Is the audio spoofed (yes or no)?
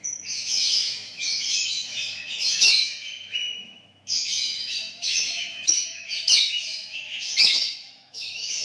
yes